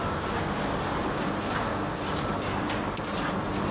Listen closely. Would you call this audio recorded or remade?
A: recorded